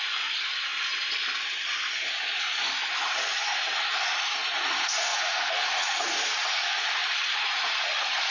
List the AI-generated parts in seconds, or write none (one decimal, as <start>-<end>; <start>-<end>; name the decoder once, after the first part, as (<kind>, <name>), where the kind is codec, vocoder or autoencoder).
0.0-0.7 (vocoder, Vocos); 4.5-7.0; 7.8-8.3